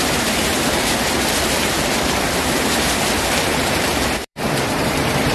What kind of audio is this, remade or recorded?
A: remade